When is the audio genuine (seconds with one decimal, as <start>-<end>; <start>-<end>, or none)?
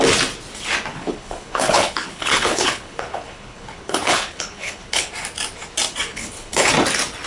0.0-0.9; 5.1-6.1; 6.7-7.3